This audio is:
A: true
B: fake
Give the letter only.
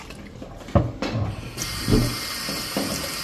A